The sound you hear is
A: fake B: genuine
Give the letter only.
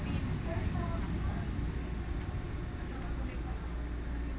B